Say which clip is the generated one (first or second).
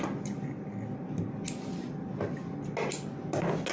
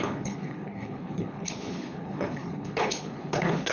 second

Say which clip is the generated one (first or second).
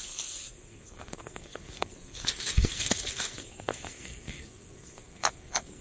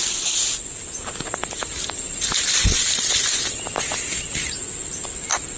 first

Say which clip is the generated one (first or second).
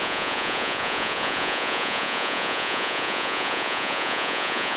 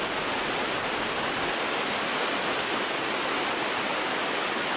first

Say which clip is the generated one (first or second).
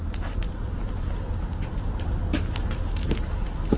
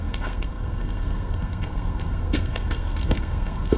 second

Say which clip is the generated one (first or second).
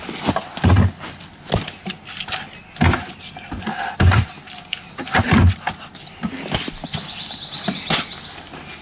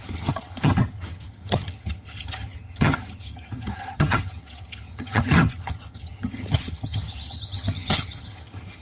second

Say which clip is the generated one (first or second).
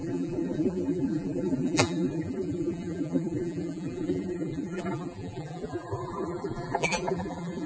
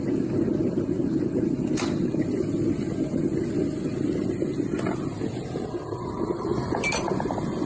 first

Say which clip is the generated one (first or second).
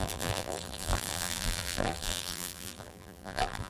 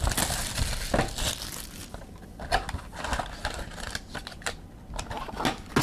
first